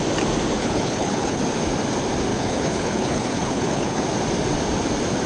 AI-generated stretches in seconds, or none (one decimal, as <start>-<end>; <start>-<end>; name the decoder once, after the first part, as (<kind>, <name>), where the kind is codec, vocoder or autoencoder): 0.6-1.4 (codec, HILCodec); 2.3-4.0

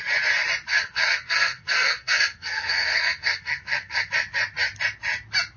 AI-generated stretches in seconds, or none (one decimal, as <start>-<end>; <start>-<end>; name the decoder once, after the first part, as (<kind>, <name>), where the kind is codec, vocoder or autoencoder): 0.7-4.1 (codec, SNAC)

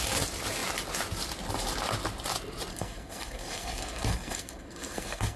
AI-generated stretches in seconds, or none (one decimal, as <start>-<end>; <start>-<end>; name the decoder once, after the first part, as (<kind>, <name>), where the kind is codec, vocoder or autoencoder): 2.7-5.4 (codec, SNAC)

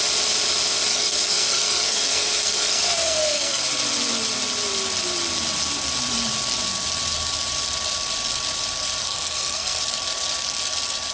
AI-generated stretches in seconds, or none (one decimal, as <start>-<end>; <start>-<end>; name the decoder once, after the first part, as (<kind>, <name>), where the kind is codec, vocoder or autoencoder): 0.9-3.6 (codec, SNAC); 9.0-9.8

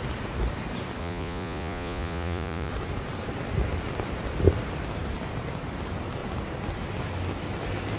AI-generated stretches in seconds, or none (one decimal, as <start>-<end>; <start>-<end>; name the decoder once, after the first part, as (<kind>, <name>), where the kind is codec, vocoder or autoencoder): 1.0-2.7 (vocoder, Vocos)

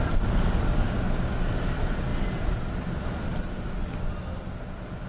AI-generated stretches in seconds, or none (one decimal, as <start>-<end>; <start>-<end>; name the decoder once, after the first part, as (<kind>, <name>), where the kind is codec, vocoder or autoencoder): none